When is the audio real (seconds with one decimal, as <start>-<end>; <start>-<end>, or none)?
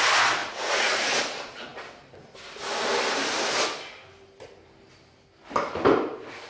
0.0-0.4; 1.2-6.5